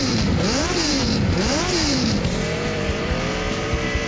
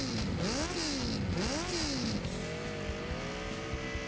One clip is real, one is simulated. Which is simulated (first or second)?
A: first